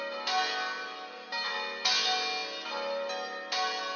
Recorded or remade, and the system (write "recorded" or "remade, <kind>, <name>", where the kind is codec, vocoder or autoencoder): recorded